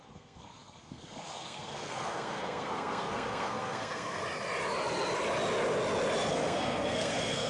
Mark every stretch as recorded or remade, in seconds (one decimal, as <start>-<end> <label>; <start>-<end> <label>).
0.0-4.2 remade; 4.2-6.3 recorded; 6.3-7.5 remade